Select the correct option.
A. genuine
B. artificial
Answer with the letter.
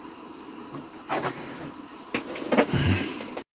B